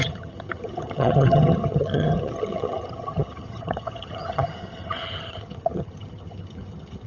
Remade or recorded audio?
remade